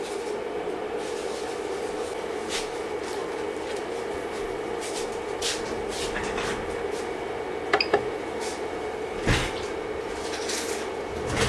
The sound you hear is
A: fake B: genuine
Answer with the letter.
B